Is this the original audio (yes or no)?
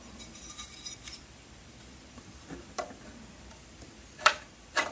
no